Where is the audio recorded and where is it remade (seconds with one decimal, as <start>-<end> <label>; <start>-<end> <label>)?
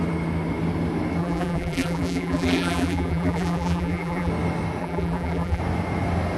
0.0-1.2 recorded; 1.2-4.3 remade; 4.3-4.8 recorded; 4.8-5.6 remade; 5.6-6.4 recorded